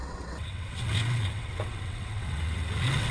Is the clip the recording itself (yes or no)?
no